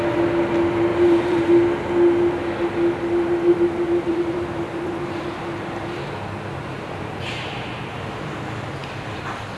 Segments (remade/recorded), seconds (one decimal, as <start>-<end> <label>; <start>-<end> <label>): 0.0-0.9 recorded; 0.9-1.5 remade; 1.5-4.1 recorded; 4.1-8.4 remade; 8.4-9.6 recorded